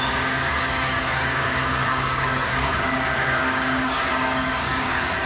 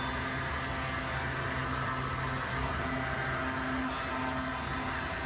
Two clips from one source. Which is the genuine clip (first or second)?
second